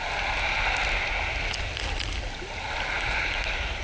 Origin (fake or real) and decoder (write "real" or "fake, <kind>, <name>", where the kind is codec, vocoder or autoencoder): real